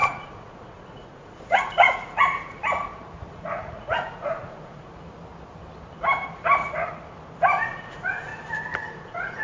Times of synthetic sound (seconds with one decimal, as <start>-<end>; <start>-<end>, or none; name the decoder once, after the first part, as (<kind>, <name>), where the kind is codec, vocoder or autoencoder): 0.0-2.6 (vocoder, Vocos); 3.3-4.9; 7.6-8.3; 8.9-9.4